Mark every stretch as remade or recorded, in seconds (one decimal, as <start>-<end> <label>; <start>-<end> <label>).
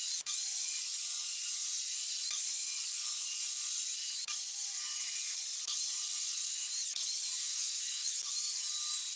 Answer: 0.0-7.4 recorded; 7.4-8.2 remade; 8.2-9.2 recorded